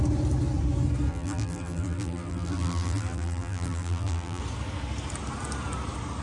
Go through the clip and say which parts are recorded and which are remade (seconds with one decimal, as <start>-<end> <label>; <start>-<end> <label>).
0.0-1.1 recorded; 1.1-4.4 remade; 4.4-6.2 recorded

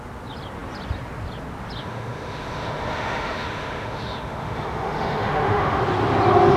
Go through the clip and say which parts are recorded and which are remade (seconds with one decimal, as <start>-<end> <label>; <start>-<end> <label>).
0.0-1.8 recorded; 1.8-5.8 remade; 5.8-6.6 recorded

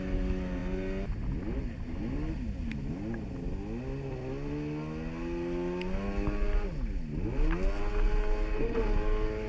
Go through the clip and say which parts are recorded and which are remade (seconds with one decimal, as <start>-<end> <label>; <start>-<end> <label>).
0.0-9.5 recorded

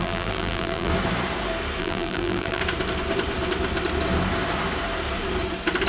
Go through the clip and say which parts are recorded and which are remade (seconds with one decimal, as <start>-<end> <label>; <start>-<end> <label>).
0.0-0.9 remade; 0.9-1.8 recorded; 1.8-2.6 remade; 2.6-5.9 recorded

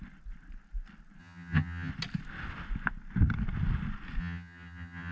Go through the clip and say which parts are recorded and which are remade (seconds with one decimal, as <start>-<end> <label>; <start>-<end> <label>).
0.0-1.2 recorded; 1.2-1.9 remade; 1.9-4.2 recorded; 4.2-5.1 remade

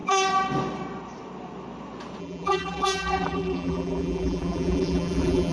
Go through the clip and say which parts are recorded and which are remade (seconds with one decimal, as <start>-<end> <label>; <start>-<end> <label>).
0.0-2.2 recorded; 2.2-5.5 remade

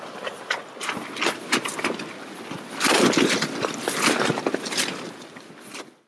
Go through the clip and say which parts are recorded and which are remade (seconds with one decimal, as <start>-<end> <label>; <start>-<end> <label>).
0.0-6.1 recorded